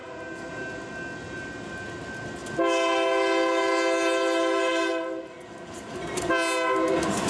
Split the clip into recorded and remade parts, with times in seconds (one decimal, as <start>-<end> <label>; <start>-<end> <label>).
0.0-7.3 recorded